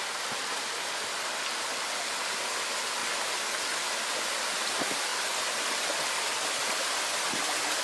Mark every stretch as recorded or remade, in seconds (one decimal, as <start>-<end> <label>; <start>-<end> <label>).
0.0-7.8 recorded